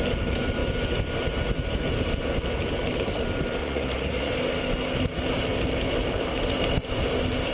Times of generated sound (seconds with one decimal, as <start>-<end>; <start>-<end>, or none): 3.6-4.3